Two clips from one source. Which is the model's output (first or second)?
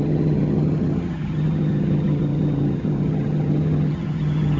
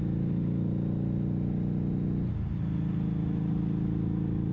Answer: first